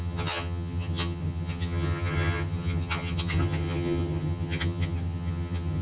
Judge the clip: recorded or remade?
remade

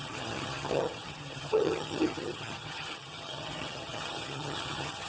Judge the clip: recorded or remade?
remade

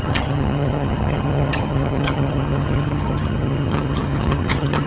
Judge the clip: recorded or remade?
remade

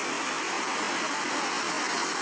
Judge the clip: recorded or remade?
recorded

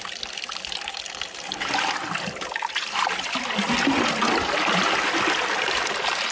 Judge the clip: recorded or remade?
recorded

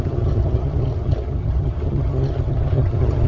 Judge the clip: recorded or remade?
remade